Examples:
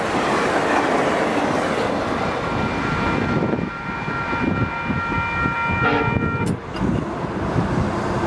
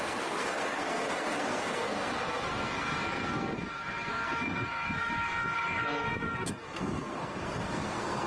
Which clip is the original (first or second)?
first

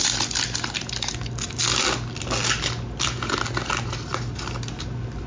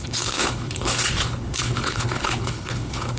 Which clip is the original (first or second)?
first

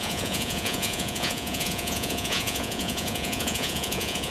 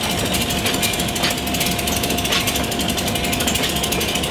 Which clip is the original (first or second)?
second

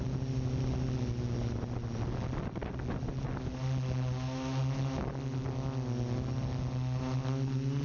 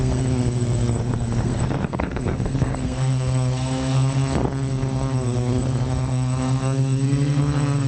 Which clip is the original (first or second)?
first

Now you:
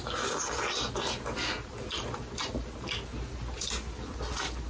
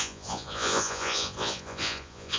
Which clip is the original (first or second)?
first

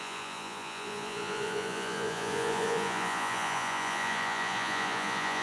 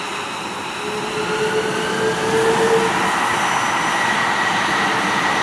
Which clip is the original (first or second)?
second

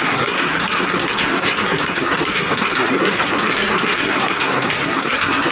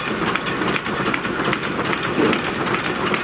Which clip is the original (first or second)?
second